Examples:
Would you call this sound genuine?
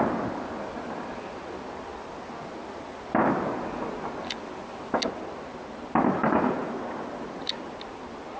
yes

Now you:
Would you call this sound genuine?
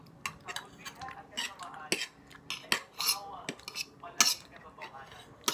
yes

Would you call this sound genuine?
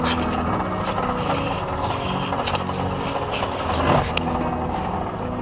yes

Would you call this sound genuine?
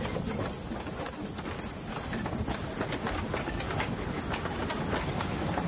yes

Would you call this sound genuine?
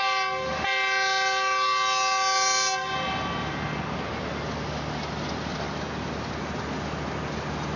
yes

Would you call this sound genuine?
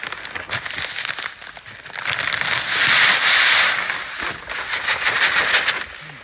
yes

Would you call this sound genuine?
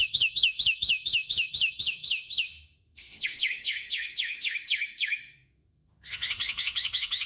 no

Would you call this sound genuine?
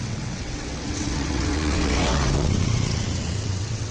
no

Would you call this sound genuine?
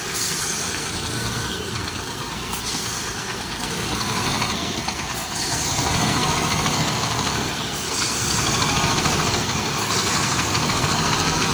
no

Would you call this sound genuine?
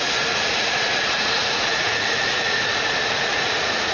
no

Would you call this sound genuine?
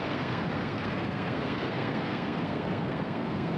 no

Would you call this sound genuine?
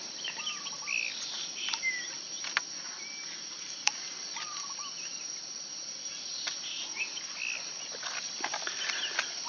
yes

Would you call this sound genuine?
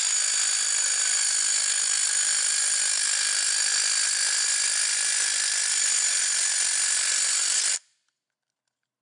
yes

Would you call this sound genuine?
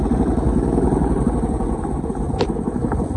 yes